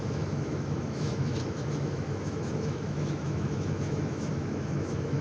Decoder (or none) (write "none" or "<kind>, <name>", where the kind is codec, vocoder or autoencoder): autoencoder, DAC-VAE